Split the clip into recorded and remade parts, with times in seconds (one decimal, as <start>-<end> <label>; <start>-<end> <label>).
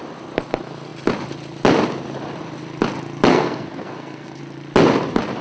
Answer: 0.0-3.3 recorded; 3.3-4.4 remade; 4.4-5.4 recorded